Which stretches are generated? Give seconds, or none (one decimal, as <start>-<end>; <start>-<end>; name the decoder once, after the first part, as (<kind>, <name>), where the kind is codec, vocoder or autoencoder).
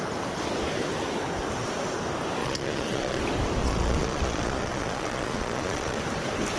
2.4-3.2 (vocoder, Vocos); 3.6-6.0